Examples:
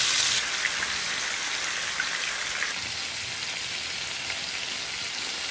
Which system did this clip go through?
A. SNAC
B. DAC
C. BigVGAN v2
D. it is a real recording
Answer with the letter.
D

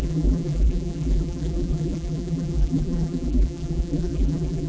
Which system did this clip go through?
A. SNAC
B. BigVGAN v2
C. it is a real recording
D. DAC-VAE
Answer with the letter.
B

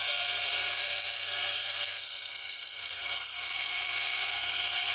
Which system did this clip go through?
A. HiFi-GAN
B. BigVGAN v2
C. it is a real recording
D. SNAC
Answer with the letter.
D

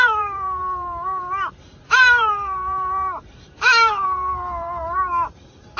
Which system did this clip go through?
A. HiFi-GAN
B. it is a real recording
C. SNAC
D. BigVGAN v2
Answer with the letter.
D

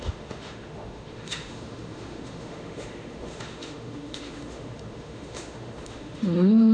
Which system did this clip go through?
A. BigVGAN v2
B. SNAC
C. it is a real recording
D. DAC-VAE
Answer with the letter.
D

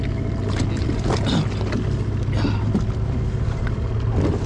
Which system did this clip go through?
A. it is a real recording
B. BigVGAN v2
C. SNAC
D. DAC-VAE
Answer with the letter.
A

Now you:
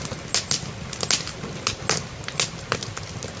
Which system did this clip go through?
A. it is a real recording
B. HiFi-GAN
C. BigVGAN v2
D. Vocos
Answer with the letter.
A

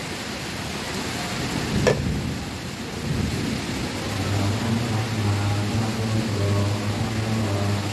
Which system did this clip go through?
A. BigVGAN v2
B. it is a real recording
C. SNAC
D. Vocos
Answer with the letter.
B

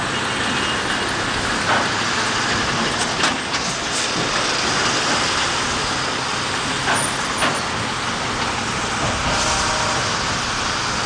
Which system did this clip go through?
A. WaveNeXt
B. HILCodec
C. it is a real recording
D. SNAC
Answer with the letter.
C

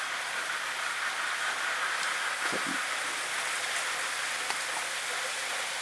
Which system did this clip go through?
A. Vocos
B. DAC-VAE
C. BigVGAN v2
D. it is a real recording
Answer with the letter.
C